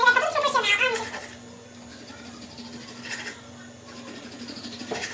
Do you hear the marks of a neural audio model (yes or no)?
no